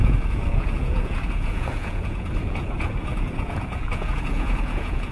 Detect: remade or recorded remade